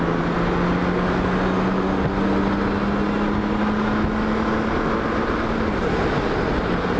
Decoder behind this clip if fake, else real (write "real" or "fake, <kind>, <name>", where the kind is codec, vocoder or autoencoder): real